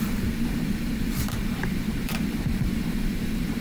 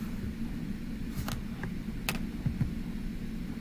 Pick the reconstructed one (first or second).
first